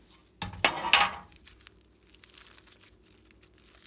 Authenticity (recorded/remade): recorded